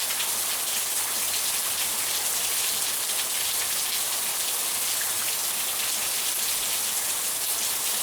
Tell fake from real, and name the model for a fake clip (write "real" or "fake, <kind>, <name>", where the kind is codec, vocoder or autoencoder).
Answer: real